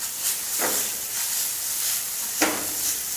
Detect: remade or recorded remade